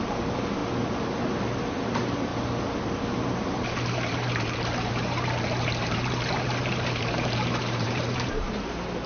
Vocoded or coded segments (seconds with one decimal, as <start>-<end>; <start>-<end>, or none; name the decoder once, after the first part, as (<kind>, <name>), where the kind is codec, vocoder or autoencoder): 0.0-0.6 (vocoder, BigVGAN v2); 1.4-2.3; 3.0-9.1